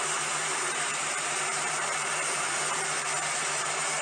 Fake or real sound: fake